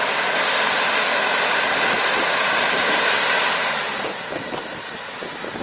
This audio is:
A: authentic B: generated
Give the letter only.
A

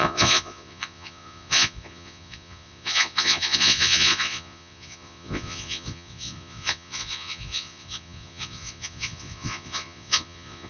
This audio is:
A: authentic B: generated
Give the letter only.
B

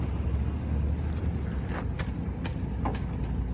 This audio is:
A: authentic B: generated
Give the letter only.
A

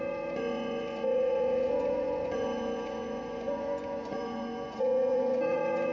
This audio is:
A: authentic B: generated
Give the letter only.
B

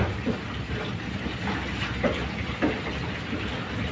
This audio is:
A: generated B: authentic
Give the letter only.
B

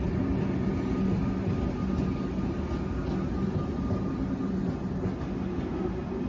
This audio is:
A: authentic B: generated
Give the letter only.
A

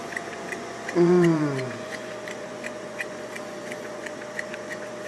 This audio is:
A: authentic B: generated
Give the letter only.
B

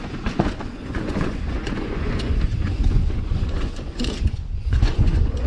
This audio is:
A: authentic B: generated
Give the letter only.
B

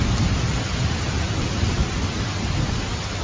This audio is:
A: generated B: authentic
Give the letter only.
B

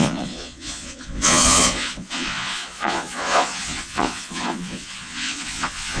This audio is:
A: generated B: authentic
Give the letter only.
A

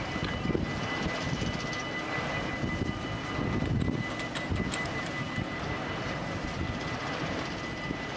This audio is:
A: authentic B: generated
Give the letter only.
A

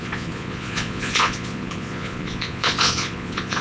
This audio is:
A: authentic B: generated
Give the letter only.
B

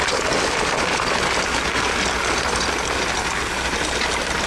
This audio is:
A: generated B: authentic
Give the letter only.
B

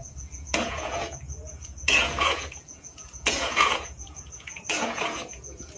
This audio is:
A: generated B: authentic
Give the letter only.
A